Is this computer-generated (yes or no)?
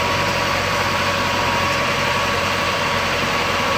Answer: yes